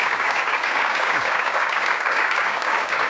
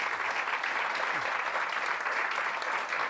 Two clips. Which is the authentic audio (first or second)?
second